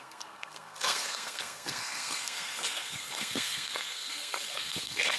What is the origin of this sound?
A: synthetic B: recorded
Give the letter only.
A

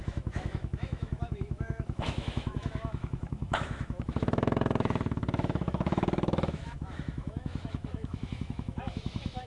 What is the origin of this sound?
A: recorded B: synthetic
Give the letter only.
B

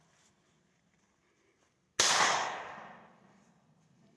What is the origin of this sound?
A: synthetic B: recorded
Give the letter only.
B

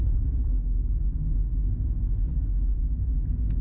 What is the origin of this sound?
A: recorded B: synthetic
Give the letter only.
A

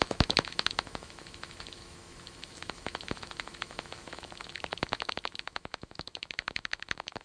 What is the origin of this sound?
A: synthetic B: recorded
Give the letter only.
A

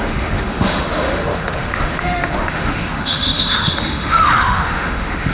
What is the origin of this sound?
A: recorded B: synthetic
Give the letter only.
B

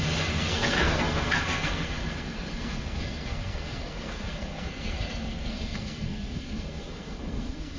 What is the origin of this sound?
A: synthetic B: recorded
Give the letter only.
A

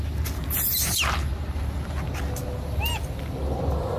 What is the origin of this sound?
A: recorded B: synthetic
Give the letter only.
A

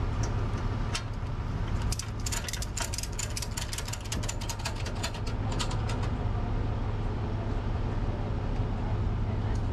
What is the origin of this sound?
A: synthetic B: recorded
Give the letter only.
B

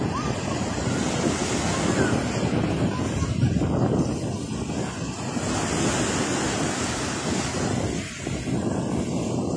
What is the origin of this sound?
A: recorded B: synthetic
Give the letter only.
A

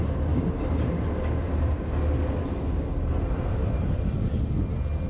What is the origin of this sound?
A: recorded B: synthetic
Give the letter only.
A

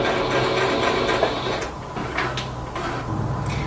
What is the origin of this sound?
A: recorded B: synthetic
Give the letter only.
A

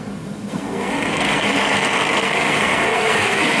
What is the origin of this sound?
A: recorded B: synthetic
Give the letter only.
B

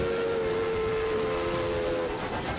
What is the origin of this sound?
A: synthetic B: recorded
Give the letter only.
B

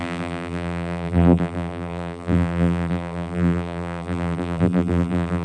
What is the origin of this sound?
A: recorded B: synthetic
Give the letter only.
B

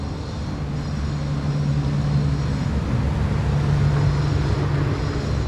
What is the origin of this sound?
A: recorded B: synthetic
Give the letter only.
A